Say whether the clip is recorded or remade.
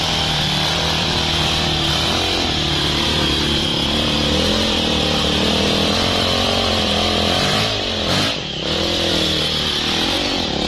remade